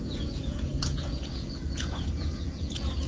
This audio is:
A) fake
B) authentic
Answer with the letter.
A